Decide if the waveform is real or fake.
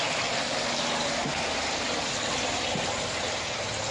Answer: real